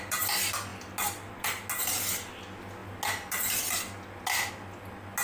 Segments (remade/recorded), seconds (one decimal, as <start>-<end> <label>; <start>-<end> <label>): 0.0-5.2 recorded